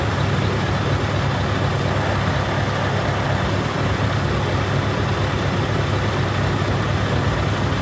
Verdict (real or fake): real